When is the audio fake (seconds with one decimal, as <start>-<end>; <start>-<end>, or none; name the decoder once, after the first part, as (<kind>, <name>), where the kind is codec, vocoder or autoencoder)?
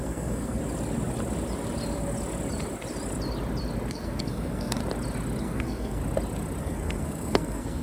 0.0-0.6 (codec, SNAC); 3.9-4.8; 5.4-6.0; 6.6-7.8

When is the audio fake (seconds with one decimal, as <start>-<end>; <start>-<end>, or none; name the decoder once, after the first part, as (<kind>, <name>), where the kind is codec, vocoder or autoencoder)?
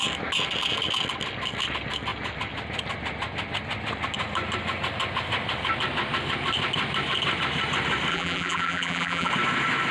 8.1-9.3 (vocoder, BigVGAN v2)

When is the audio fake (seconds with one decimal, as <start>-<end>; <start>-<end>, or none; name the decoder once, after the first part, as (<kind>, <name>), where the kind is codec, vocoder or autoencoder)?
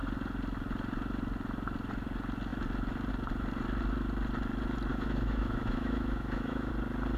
4.9-6.7 (autoencoder, DAC-VAE)